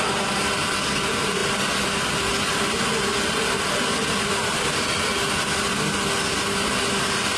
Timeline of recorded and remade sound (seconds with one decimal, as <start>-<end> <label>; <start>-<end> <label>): 0.0-7.4 recorded